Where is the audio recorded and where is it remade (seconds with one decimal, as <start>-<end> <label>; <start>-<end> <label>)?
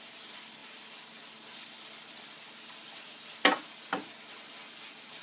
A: 0.0-5.2 recorded